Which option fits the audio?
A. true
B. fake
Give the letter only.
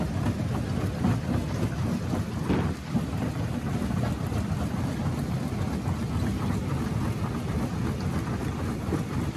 A